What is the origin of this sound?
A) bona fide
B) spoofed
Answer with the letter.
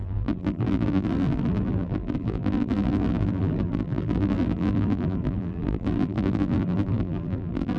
B